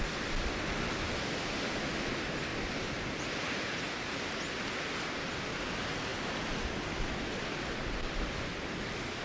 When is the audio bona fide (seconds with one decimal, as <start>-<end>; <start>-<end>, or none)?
0.0-9.2